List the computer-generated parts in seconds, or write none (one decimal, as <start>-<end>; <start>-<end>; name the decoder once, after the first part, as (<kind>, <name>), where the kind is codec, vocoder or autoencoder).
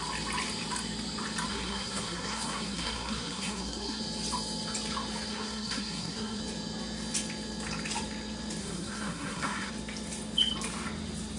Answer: 1.5-4.0 (codec, SNAC); 5.3-6.4; 8.6-9.7